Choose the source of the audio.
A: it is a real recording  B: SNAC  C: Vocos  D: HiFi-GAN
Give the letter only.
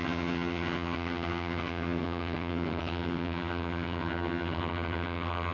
D